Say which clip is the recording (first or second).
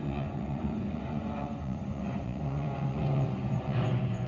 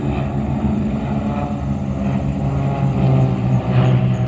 second